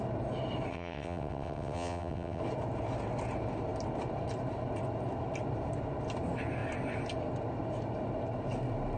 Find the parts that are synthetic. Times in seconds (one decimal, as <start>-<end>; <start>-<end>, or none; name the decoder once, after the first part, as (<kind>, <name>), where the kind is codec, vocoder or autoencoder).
0.7-2.4 (vocoder, WaveNeXt)